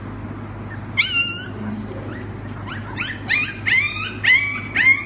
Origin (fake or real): real